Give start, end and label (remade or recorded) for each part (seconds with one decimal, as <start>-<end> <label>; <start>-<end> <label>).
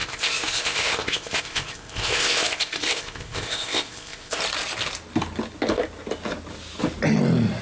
0.0-4.4 remade; 4.4-7.6 recorded